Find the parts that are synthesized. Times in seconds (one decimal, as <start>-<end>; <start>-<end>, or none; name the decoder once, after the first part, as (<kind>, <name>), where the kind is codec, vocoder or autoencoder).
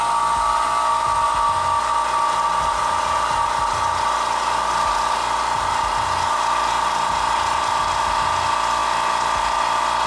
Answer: none